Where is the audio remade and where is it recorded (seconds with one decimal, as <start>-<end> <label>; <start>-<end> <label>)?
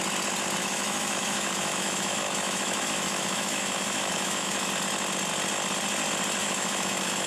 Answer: 0.0-0.6 recorded; 0.6-4.7 remade; 4.7-6.4 recorded; 6.4-7.3 remade